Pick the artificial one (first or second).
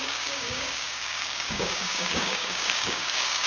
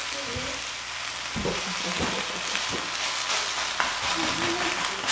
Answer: first